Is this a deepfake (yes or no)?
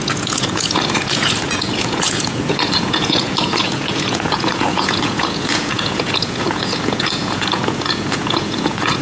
yes